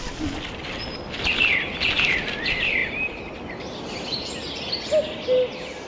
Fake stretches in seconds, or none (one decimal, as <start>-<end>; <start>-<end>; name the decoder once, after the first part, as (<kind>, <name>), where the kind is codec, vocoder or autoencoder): none